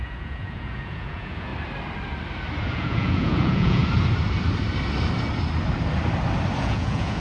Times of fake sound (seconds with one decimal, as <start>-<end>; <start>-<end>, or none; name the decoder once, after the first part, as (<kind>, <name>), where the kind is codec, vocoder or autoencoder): 0.0-1.5 (vocoder, Vocos); 2.7-3.8; 6.6-7.2